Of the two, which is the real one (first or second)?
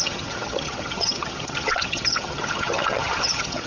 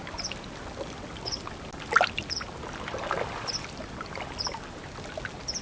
second